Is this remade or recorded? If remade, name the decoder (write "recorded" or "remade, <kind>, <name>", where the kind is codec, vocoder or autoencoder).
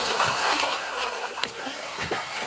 remade, codec, SNAC